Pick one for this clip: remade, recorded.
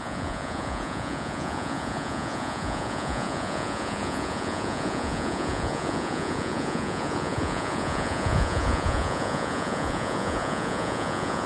remade